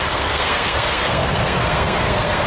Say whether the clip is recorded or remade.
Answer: remade